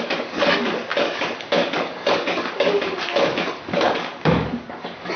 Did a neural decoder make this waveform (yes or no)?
yes